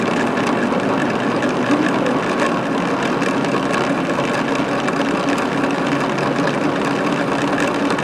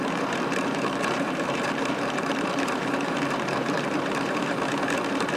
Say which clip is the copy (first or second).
second